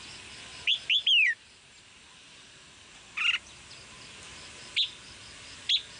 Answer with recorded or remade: recorded